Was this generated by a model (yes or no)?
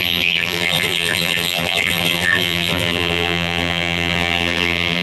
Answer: yes